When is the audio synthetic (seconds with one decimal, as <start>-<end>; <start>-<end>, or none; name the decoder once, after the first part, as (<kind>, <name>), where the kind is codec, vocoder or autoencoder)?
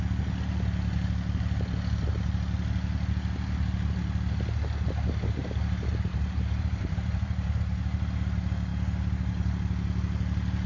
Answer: 6.1-7.6 (vocoder, BigVGAN v2)